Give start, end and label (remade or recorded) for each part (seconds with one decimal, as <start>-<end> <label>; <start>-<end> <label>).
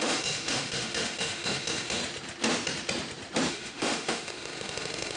0.0-2.0 remade; 2.0-3.5 recorded; 3.5-5.2 remade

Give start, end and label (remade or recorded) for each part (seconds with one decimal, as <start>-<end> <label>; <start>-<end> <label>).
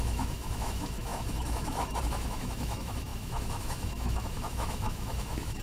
0.0-5.6 remade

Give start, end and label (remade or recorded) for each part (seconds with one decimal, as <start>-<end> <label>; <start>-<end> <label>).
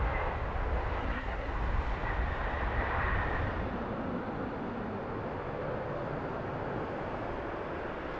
0.0-1.0 recorded; 1.0-1.5 remade; 1.5-8.2 recorded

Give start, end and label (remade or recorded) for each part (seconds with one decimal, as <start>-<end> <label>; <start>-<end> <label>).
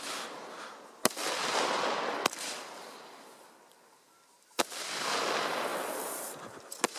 0.0-1.4 recorded; 1.4-4.6 remade; 4.6-7.0 recorded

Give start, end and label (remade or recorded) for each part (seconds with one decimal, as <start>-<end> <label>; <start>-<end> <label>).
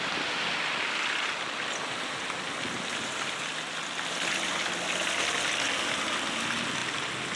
0.0-7.4 recorded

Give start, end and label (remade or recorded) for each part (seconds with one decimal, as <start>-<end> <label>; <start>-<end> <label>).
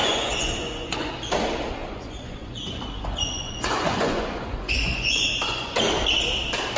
0.0-1.1 remade; 1.1-1.8 recorded; 1.8-5.9 remade; 5.9-6.8 recorded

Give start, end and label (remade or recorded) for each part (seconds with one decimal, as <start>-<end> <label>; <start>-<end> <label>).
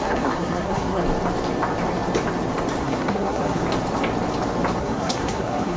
0.0-1.0 remade; 1.0-2.8 recorded; 2.8-3.6 remade; 3.6-4.8 recorded; 4.8-5.8 remade